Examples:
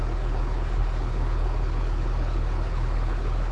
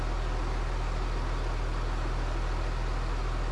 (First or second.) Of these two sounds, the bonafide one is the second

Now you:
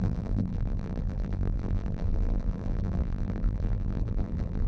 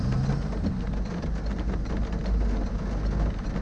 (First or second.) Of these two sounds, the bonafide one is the second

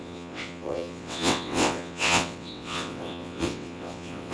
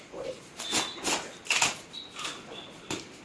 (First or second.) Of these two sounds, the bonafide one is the second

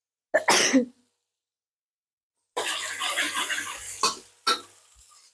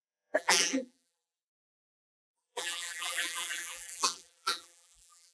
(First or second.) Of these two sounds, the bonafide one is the first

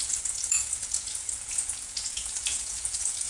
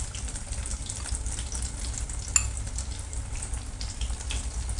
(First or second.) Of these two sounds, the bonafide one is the second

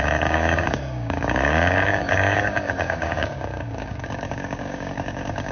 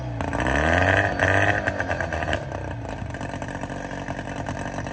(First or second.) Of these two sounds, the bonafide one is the second